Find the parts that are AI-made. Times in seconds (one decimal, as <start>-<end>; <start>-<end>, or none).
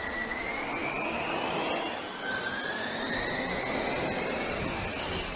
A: none